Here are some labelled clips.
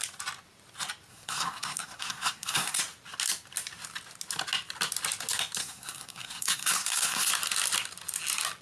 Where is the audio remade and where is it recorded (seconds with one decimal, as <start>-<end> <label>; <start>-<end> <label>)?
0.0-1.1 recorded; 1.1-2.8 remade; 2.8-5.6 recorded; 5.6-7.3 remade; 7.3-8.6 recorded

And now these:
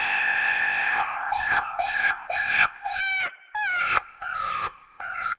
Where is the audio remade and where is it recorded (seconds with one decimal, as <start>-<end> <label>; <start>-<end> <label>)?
0.0-3.0 remade; 3.0-3.8 recorded; 3.8-5.4 remade

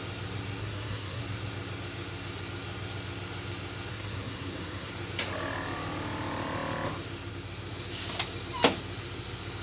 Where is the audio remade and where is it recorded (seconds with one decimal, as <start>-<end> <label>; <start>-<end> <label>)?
0.0-0.6 recorded; 0.6-1.2 remade; 1.2-3.9 recorded; 3.9-4.9 remade; 4.9-9.6 recorded

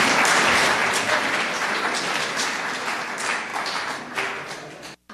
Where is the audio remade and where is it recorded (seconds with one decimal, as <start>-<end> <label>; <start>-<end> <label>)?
0.0-5.1 remade

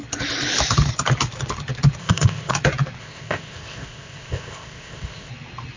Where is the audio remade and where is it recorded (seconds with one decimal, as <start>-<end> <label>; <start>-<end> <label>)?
0.0-2.0 recorded; 2.0-2.5 remade; 2.5-3.0 recorded; 3.0-5.3 remade; 5.3-5.8 recorded

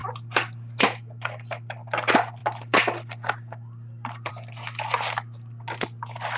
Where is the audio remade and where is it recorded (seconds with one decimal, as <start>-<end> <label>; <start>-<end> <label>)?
0.0-6.4 recorded

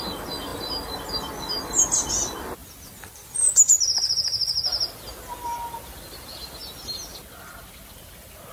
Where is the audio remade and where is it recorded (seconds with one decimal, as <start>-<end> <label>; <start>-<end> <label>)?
0.0-8.5 recorded